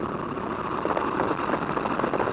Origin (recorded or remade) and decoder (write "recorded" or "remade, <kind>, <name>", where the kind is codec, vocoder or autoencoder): recorded